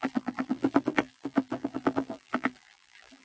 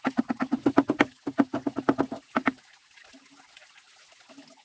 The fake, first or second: first